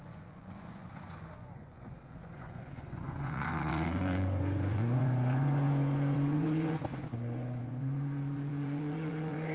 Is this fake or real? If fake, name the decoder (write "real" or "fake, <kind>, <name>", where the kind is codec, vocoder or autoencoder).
fake, vocoder, Vocos